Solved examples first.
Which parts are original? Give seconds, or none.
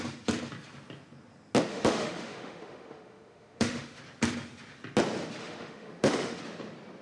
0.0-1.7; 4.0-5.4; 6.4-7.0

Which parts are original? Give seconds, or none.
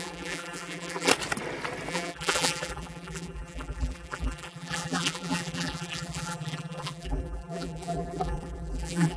1.1-1.9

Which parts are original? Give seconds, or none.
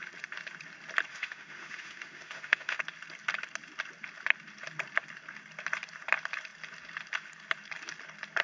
0.0-1.1; 2.8-8.4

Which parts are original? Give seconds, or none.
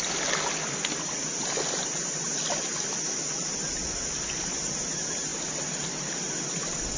0.0-7.0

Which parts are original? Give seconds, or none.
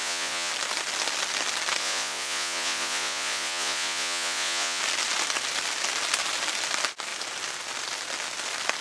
0.5-1.8; 4.8-8.8